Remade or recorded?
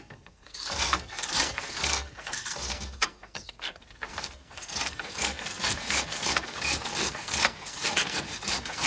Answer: remade